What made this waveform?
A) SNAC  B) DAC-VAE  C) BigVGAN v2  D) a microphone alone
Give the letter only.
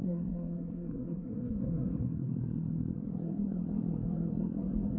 A